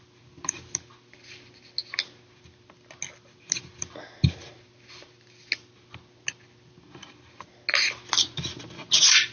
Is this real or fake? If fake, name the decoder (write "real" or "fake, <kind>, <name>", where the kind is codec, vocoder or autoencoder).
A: real